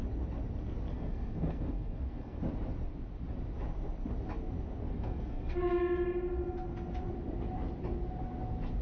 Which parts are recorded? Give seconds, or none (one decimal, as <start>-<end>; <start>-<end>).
0.0-0.9; 2.4-4.9; 5.7-8.8